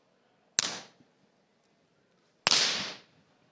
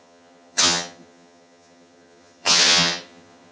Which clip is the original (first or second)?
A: first